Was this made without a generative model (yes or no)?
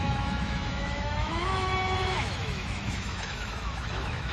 no